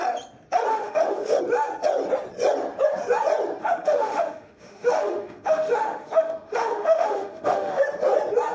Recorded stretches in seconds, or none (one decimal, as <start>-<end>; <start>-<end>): 0.0-0.7; 1.4-3.6; 7.8-8.5